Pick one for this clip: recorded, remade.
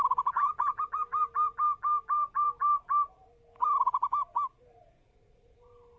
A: remade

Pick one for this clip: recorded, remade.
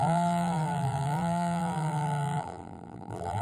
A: remade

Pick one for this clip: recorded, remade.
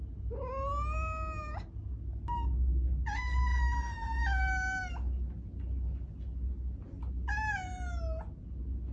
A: recorded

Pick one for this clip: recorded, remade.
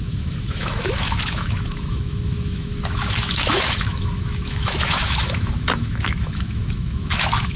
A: remade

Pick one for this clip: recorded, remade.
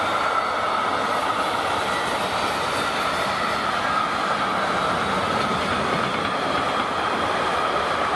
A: recorded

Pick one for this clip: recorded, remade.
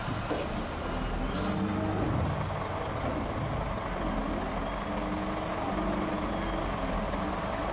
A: recorded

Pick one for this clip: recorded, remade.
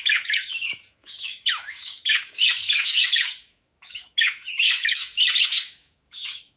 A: remade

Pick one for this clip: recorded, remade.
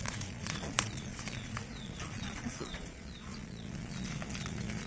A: remade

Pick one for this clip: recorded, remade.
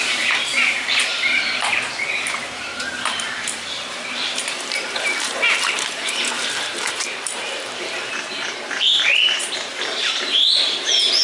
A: remade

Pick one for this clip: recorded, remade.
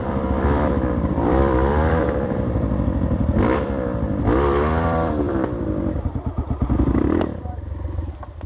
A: remade